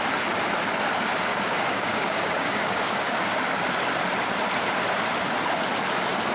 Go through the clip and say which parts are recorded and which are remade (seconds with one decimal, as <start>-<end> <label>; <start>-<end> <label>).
0.0-1.3 recorded; 1.3-3.4 remade; 3.4-6.3 recorded